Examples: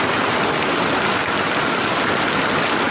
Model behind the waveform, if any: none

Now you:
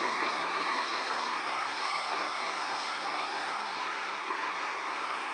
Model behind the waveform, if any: codec, SNAC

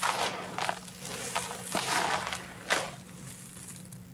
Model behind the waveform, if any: none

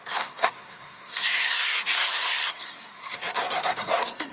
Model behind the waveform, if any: codec, SNAC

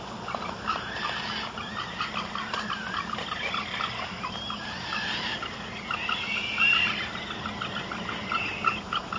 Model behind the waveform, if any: none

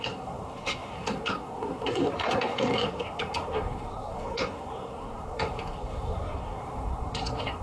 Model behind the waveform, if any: codec, SNAC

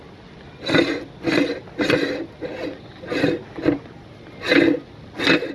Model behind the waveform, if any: none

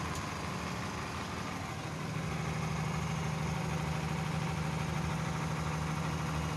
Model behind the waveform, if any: none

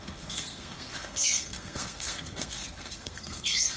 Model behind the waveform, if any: codec, SNAC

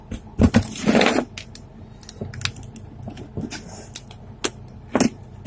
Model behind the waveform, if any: none